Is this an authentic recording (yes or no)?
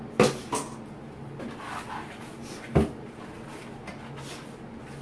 yes